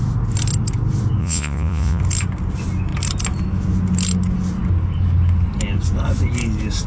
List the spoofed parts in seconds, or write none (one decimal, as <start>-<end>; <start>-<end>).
1.2-2.0